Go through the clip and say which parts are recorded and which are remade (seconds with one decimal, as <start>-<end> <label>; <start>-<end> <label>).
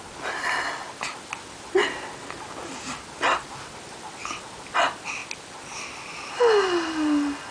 0.0-7.5 recorded